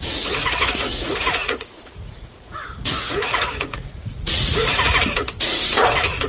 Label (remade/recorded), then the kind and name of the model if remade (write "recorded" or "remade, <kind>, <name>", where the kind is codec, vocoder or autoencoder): remade, vocoder, Vocos